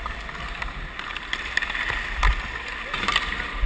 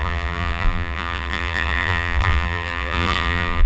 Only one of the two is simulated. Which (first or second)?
second